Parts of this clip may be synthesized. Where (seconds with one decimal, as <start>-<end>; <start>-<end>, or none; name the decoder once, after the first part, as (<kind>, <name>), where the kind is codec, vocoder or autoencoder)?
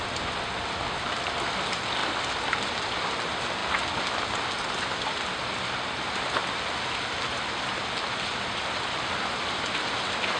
none